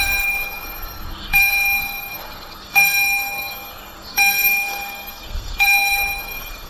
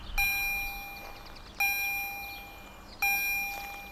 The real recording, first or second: second